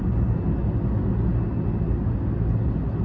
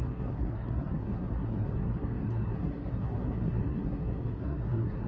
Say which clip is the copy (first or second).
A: second